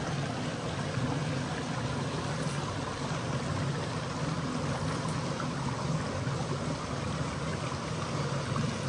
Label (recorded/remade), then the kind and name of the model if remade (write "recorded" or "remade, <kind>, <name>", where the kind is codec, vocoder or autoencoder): recorded